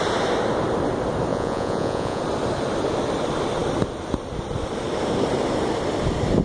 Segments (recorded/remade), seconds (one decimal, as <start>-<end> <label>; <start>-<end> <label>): 0.0-1.3 recorded; 1.3-2.2 remade; 2.2-6.4 recorded